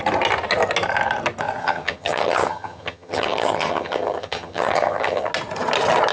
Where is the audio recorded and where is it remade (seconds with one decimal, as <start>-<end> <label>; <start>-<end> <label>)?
0.0-1.6 recorded; 1.6-5.3 remade; 5.3-6.1 recorded

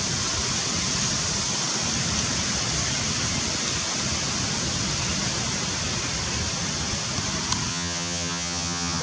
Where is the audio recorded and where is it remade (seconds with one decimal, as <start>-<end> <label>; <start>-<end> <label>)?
0.0-7.7 recorded; 7.7-9.0 remade

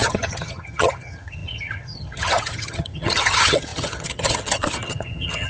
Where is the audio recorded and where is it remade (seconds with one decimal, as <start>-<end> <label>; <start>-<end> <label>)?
0.0-5.5 remade